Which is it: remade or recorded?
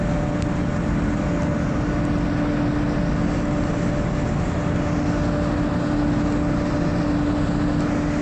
recorded